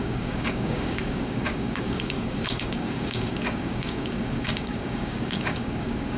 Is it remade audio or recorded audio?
remade